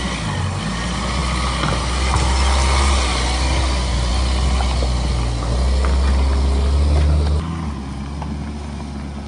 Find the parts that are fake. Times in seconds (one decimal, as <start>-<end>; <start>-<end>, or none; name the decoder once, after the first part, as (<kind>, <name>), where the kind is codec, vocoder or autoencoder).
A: none